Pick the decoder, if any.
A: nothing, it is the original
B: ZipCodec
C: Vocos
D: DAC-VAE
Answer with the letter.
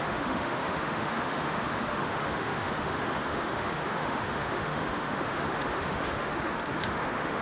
D